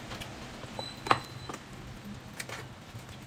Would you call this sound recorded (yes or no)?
yes